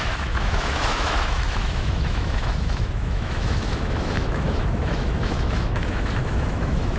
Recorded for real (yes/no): no